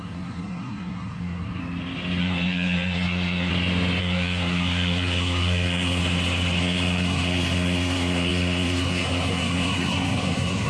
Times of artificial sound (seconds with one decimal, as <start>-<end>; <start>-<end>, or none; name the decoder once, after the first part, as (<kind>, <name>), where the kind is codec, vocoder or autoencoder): 0.0-1.6 (codec, SNAC); 2.2-3.5; 4.0-6.0; 6.6-10.7